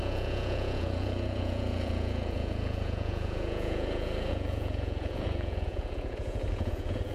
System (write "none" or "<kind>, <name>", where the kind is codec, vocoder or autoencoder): vocoder, Vocos